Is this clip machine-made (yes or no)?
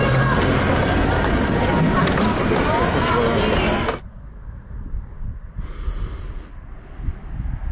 no